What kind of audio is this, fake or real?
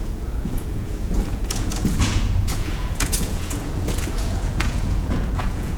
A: fake